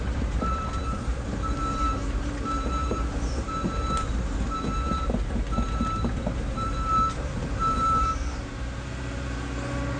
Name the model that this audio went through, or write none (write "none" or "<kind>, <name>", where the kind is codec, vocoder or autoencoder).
vocoder, BigVGAN v2